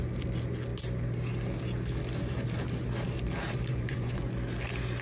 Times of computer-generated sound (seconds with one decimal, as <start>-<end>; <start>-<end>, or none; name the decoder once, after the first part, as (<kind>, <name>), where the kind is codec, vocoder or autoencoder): 3.7-4.2 (vocoder, Vocos)